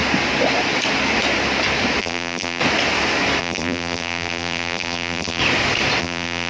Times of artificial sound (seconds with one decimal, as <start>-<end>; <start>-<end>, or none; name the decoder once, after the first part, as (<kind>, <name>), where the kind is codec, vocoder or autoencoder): 2.0-2.6 (vocoder, BigVGAN v2); 3.4-5.4; 6.0-6.5